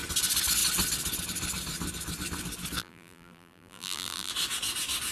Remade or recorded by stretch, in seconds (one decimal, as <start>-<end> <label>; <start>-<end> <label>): 0.0-2.8 recorded; 2.8-4.3 remade; 4.3-5.1 recorded